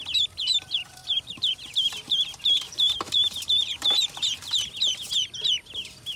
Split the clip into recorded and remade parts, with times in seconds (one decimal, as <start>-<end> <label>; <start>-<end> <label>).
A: 0.0-1.0 recorded; 1.0-4.7 remade; 4.7-6.2 recorded